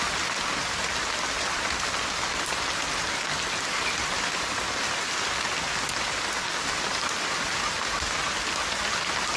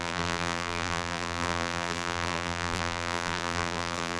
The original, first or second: first